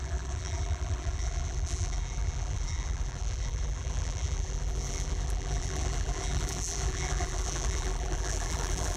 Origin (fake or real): fake